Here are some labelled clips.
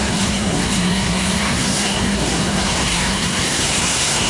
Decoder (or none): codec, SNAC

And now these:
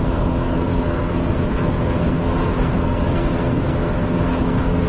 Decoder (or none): codec, SNAC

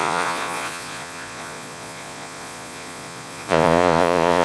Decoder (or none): vocoder, Vocos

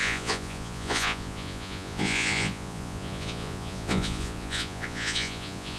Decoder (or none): vocoder, Vocos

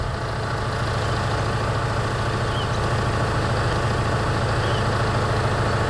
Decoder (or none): none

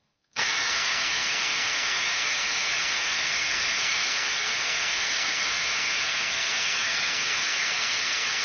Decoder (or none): codec, SNAC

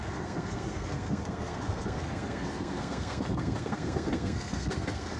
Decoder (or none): codec, SNAC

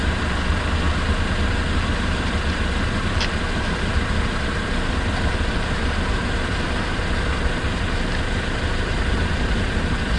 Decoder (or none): vocoder, BigVGAN v2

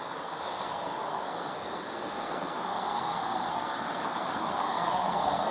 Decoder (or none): codec, SNAC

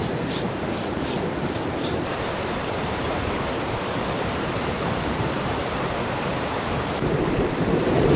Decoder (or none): vocoder, BigVGAN v2